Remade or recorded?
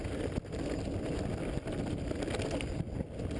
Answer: recorded